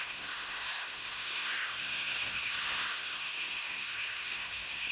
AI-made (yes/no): yes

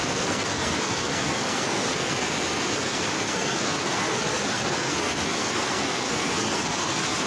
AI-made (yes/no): yes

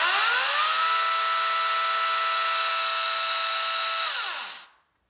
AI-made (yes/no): no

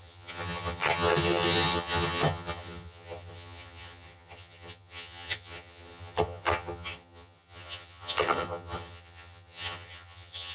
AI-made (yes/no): yes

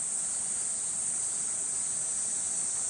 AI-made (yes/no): no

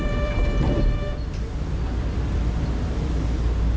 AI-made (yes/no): yes